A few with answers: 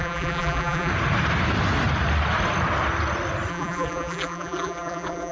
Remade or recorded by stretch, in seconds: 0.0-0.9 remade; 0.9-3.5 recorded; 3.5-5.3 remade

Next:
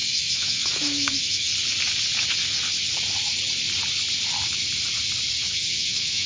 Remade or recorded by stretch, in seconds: 0.0-1.5 remade; 1.5-5.3 recorded; 5.3-6.3 remade

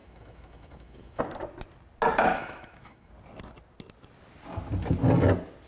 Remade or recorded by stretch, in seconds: 0.0-1.2 remade; 1.2-2.3 recorded; 2.3-3.1 remade; 3.1-5.7 recorded

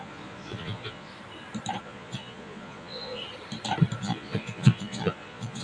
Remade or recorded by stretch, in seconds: 0.0-1.1 remade; 1.1-1.8 recorded; 1.8-3.2 remade; 3.2-4.0 recorded; 4.0-5.6 remade

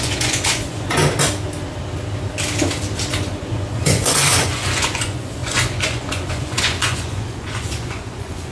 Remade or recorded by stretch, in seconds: 0.0-1.0 remade; 1.0-3.1 recorded; 3.1-8.5 remade

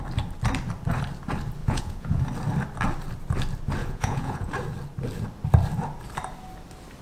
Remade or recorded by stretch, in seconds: 0.0-1.6 recorded; 1.6-2.2 remade; 2.2-3.8 recorded; 3.8-4.5 remade; 4.5-7.0 recorded

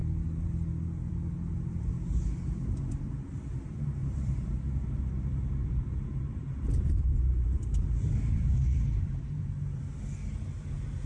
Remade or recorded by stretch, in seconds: 0.0-4.0 recorded; 4.0-5.0 remade; 5.0-5.6 recorded; 5.6-9.8 remade; 9.8-11.1 recorded

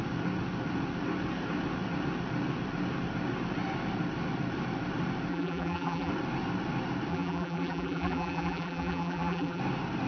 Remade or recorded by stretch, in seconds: 0.0-5.3 recorded; 5.3-6.1 remade; 6.1-7.1 recorded; 7.1-9.6 remade; 9.6-10.1 recorded